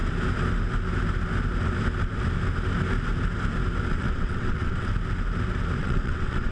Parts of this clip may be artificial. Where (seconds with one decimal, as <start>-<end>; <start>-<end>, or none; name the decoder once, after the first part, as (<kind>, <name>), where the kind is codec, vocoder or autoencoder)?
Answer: 3.9-4.9 (vocoder, WaveNeXt); 5.8-6.5